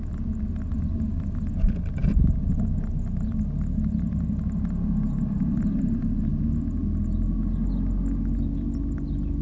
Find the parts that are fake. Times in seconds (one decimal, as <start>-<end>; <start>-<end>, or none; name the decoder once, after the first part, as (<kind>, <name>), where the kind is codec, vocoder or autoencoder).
none